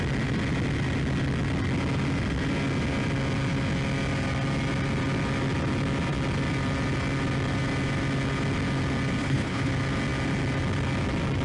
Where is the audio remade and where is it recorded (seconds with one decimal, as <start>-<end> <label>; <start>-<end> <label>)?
0.0-9.2 recorded; 9.2-9.7 remade; 9.7-11.4 recorded